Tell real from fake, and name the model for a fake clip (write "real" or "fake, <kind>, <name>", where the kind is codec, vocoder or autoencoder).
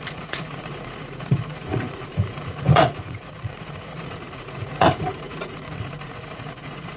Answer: fake, vocoder, Vocos